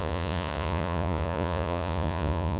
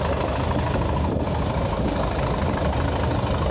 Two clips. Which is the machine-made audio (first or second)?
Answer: first